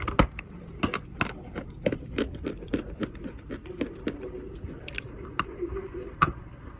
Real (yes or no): yes